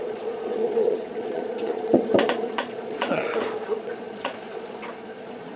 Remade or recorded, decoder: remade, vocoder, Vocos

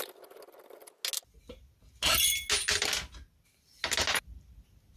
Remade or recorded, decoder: recorded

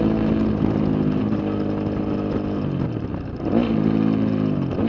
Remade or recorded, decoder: recorded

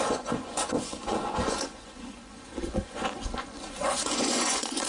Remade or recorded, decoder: remade, vocoder, Vocos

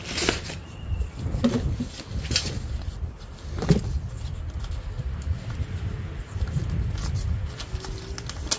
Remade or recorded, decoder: recorded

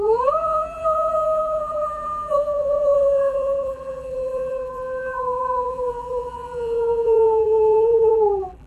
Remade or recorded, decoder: remade, vocoder, BigVGAN v2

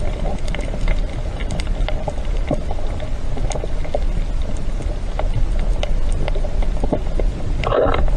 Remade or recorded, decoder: recorded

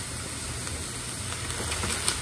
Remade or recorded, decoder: recorded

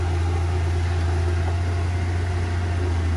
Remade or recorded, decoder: recorded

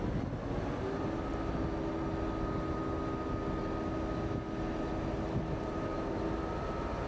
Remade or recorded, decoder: recorded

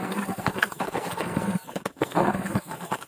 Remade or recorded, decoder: remade, codec, SNAC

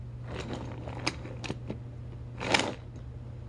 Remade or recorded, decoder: recorded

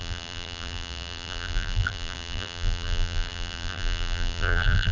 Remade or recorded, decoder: remade, vocoder, BigVGAN v2